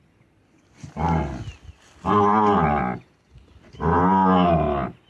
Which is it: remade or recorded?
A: recorded